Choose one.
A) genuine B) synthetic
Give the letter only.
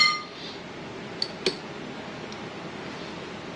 A